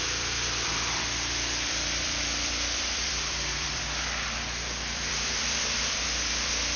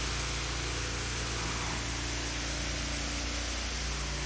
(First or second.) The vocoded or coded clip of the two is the first